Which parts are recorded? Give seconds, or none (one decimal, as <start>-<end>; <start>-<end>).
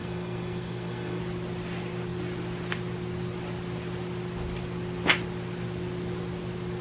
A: 1.2-6.8